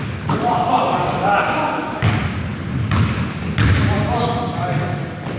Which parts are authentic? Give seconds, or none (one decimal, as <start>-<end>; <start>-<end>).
0.0-5.4